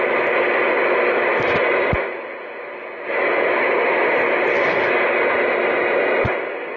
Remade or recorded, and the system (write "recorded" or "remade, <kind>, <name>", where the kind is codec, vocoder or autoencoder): recorded